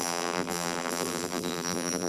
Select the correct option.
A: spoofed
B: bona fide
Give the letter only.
A